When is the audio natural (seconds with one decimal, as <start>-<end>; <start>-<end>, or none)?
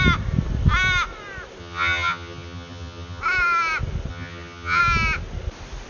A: 0.0-1.6; 3.2-4.1; 4.8-5.9